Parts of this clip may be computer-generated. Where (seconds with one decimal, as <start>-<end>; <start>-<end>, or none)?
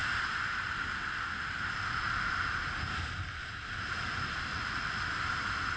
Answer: 4.5-5.0